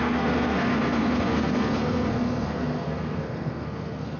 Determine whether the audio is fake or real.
fake